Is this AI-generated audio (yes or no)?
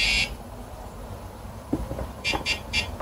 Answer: yes